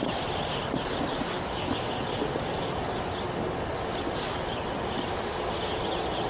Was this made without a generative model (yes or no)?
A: yes